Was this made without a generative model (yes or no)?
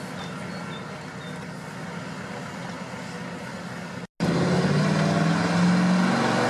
yes